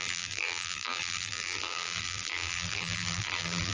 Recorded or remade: remade